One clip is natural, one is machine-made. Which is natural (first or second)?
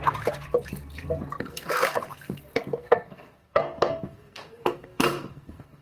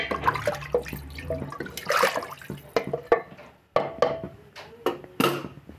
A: second